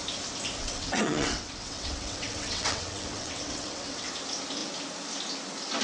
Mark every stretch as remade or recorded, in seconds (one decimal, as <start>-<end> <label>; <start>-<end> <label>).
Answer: 0.0-0.6 recorded; 0.6-4.1 remade; 4.1-5.8 recorded

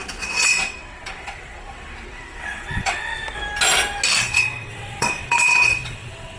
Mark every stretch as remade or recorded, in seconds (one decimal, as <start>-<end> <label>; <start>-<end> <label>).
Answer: 0.0-3.1 remade; 3.1-4.2 recorded; 4.2-6.4 remade

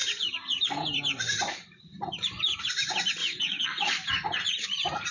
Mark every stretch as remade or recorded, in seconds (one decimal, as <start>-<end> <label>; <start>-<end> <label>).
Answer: 0.0-3.2 recorded; 3.2-3.9 remade; 3.9-5.1 recorded